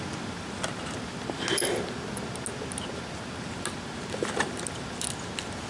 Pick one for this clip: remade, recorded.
recorded